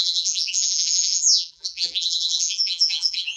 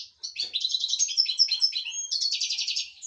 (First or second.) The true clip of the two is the second